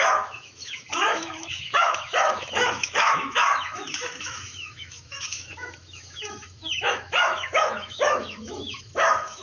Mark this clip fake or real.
fake